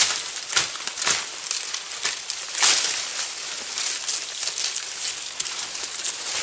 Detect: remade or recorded recorded